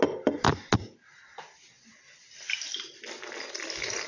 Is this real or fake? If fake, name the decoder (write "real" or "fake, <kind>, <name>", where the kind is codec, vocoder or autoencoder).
real